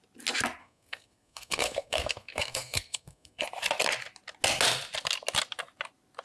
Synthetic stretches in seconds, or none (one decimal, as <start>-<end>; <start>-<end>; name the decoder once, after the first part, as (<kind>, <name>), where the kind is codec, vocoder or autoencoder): 0.6-3.4 (codec, SNAC)